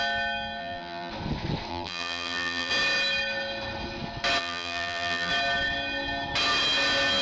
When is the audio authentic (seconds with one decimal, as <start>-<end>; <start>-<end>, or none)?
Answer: 0.0-0.6; 1.1-1.7; 2.7-4.4; 5.3-7.2

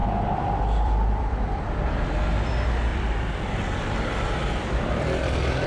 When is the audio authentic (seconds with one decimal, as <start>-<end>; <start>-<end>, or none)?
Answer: 1.9-2.9; 3.5-4.4

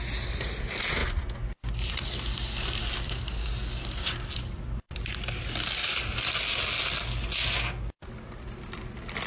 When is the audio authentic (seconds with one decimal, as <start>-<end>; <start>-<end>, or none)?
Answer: 0.0-9.3

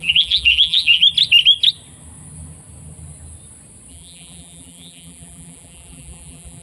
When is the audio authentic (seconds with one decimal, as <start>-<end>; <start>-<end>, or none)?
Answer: 1.0-3.9

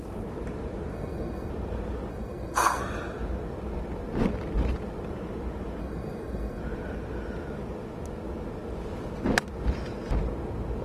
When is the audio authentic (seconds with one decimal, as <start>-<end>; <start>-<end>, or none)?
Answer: 0.0-0.9; 1.5-2.1; 2.8-5.8; 6.6-10.8

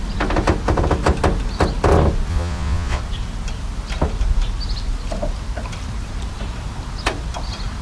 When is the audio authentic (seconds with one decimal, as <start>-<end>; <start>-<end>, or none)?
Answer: 0.0-2.3; 3.0-7.8